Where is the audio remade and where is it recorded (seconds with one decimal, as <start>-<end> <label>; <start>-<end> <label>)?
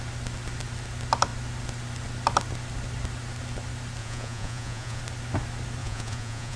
0.0-4.0 recorded; 4.0-5.0 remade; 5.0-5.8 recorded; 5.8-6.6 remade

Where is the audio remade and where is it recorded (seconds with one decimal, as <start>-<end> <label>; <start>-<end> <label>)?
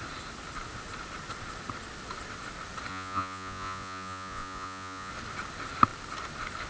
0.0-2.9 recorded; 2.9-5.1 remade; 5.1-6.7 recorded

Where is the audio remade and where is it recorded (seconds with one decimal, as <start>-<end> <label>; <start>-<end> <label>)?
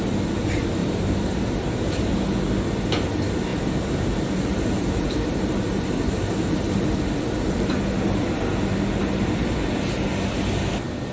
0.0-0.8 recorded; 0.8-2.3 remade; 2.3-3.5 recorded; 3.5-7.6 remade; 7.6-11.1 recorded